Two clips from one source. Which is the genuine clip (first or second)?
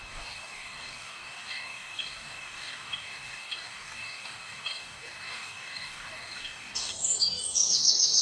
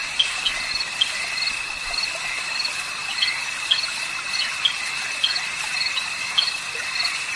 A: second